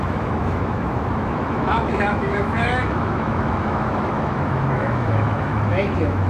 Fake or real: fake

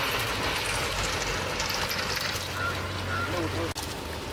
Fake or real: real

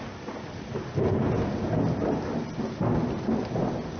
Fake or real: real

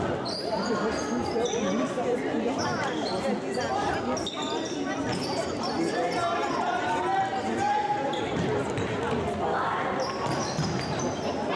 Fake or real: real